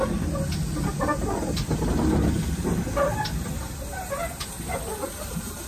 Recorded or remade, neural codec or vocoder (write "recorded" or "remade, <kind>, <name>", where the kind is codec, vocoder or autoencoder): recorded